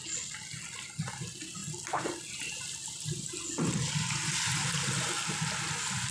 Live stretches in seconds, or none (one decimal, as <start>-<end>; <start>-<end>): 0.0-6.1